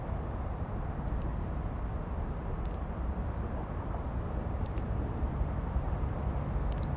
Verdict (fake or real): real